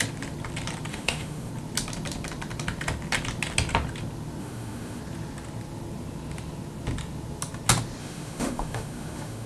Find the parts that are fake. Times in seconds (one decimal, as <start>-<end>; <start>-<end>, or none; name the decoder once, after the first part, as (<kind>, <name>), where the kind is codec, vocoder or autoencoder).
0.9-1.5 (autoencoder, DAC-VAE); 4.4-5.0; 8.0-9.5